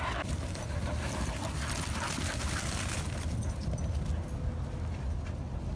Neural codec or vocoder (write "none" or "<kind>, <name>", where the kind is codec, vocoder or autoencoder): none